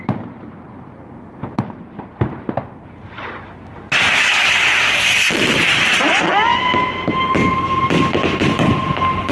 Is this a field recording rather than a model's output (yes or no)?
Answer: yes